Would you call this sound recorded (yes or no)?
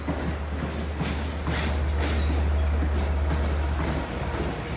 yes